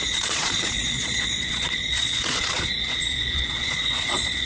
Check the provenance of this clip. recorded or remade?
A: remade